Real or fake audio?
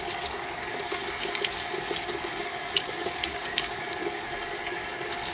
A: fake